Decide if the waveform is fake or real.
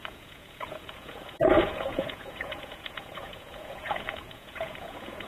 fake